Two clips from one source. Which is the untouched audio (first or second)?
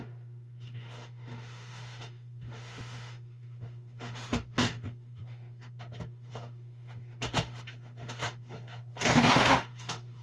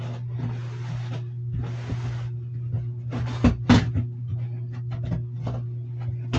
second